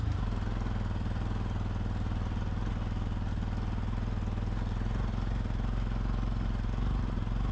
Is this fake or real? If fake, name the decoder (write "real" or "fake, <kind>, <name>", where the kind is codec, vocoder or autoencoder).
real